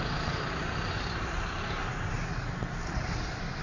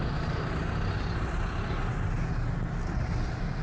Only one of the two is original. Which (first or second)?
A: second